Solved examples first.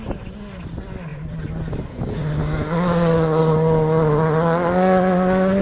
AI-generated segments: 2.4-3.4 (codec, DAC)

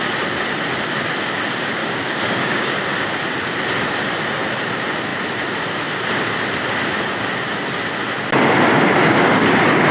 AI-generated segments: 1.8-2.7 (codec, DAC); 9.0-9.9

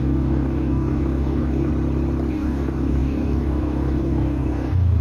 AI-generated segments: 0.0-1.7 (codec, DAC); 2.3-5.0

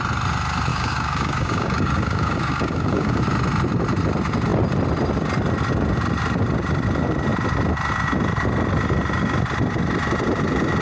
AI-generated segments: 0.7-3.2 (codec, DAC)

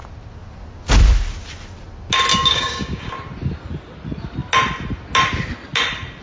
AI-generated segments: 2.3-3.1 (codec, DAC)

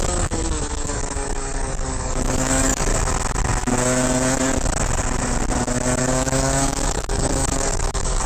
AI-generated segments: 0.0-2.9 (codec, DAC); 6.0-8.3